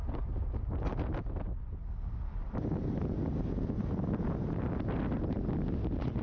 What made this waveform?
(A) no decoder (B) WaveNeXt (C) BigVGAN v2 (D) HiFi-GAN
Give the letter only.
A